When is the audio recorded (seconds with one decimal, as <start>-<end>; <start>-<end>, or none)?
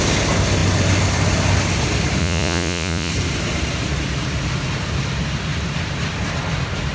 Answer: 0.0-2.2; 3.1-6.9